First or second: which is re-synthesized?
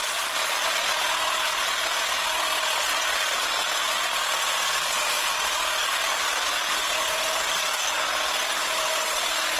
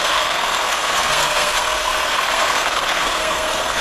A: second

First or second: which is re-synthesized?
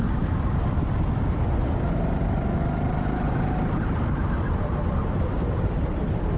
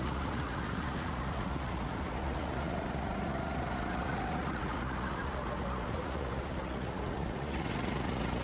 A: second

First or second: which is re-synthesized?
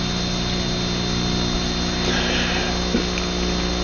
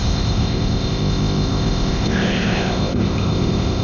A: second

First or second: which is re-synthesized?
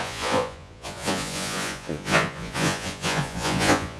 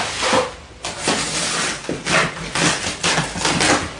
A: first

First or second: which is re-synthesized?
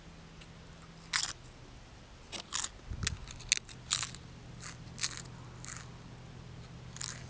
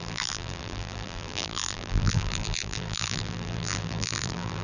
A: second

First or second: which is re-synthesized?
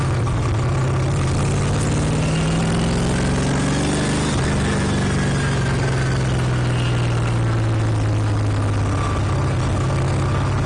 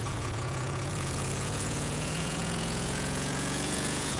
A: second